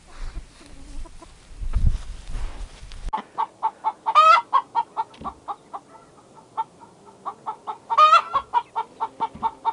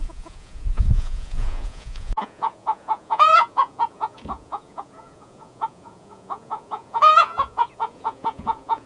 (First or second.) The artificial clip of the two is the second